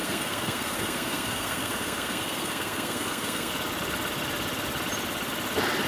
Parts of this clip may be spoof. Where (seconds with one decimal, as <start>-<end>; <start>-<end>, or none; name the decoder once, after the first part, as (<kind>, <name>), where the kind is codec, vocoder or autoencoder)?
0.0-3.5 (codec, SNAC)